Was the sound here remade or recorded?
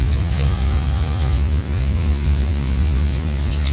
remade